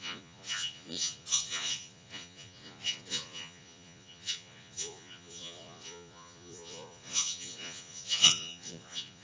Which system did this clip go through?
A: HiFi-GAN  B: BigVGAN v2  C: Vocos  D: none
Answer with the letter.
C